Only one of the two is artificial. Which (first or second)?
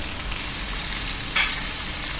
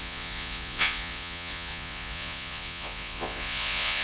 second